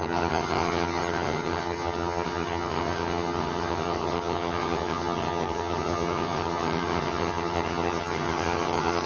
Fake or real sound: fake